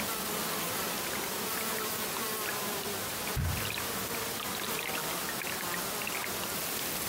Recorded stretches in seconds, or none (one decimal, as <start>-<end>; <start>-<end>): 0.0-2.5; 3.1-7.1